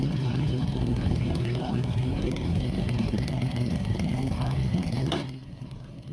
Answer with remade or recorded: remade